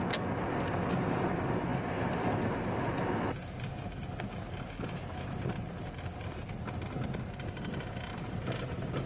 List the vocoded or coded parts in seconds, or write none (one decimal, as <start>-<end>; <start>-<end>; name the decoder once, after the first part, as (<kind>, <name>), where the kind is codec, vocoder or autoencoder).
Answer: none

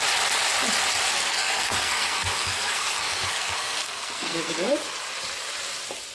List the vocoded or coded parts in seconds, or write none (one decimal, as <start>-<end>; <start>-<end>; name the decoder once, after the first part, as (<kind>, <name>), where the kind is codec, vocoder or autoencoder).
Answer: 1.1-4.8 (codec, SNAC)

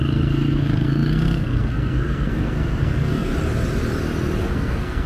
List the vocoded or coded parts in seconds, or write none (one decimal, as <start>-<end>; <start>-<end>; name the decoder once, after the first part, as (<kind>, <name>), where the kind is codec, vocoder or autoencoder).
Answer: 0.0-3.3 (codec, SNAC); 4.4-5.1

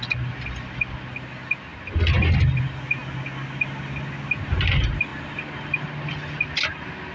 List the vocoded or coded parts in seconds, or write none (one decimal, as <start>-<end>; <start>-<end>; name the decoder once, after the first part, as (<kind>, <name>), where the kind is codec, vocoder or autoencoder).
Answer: none